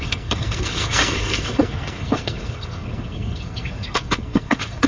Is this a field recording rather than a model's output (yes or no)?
no